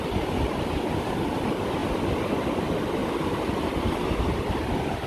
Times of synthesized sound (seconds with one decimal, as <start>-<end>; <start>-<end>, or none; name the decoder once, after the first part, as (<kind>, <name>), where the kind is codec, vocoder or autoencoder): 1.8-2.4 (vocoder, BigVGAN v2)